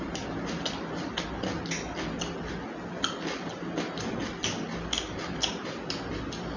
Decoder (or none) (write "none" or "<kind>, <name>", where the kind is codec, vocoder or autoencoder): none